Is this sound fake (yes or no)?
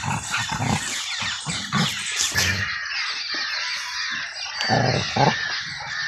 no